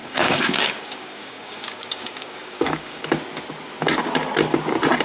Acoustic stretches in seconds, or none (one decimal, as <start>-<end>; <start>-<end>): 3.0-5.0